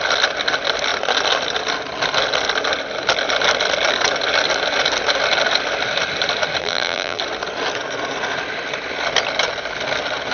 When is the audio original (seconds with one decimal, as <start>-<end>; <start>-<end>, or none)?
0.0-6.6; 7.2-10.3